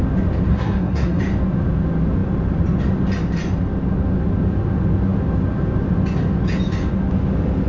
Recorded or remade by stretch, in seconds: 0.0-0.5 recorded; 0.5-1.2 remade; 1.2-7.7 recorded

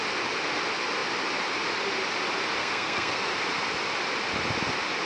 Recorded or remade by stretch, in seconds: 0.0-2.6 recorded; 2.6-3.3 remade; 3.3-5.1 recorded

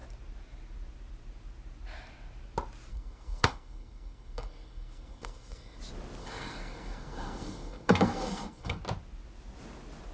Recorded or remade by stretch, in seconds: 0.0-2.9 recorded; 2.9-5.8 remade; 5.8-6.2 recorded; 6.2-8.8 remade; 8.8-10.1 recorded